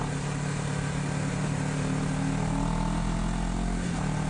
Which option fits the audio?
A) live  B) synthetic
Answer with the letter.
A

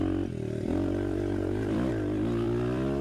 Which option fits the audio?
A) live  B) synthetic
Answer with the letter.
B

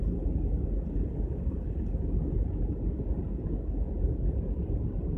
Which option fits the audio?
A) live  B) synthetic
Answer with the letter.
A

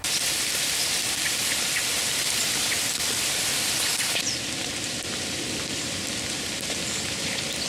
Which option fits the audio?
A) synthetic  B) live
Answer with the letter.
A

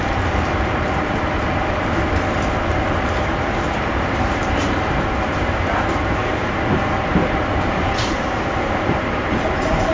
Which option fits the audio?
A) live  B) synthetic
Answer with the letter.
B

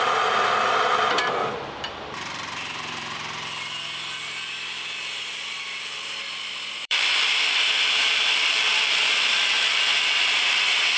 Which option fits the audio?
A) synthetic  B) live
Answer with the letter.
A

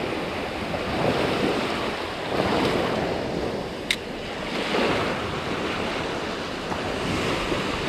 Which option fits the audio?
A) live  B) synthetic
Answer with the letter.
A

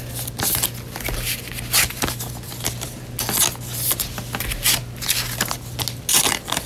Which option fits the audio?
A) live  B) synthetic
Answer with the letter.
A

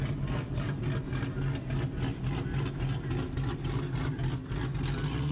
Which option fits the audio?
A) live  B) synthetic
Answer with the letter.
A